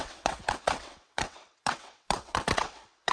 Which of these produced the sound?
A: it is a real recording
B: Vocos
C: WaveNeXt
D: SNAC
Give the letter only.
C